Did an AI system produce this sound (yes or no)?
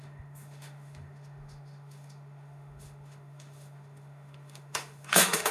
yes